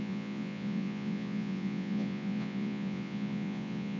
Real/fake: fake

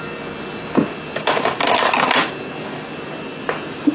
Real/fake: real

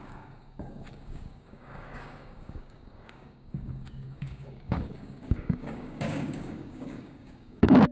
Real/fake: fake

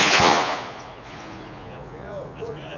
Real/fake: fake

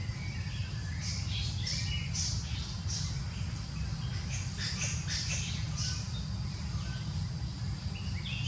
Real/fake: real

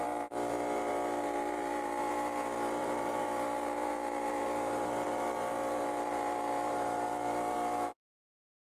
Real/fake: fake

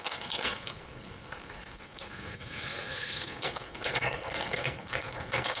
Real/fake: fake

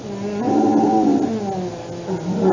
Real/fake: real